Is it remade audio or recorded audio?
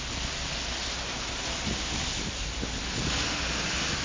recorded